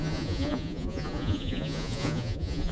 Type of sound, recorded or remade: remade